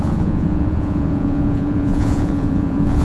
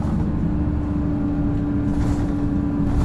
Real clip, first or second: second